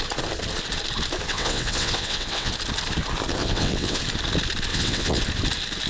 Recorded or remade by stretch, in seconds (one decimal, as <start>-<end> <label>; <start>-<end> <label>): 0.0-1.3 recorded; 1.3-2.5 remade; 2.5-3.4 recorded; 3.4-4.0 remade; 4.0-4.7 recorded; 4.7-5.2 remade; 5.2-5.9 recorded